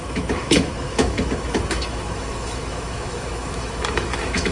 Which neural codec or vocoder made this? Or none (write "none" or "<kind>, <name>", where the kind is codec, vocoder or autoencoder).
autoencoder, DAC-VAE